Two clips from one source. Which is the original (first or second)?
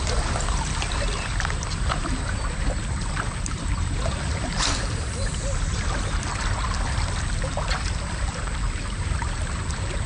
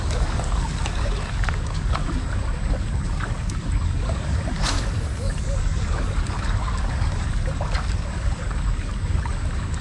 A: first